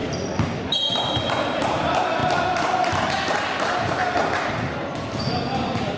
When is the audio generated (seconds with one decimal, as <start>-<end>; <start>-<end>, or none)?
0.0-0.6; 2.2-4.5